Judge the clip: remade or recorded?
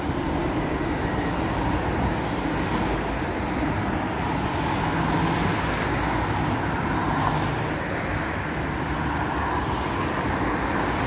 recorded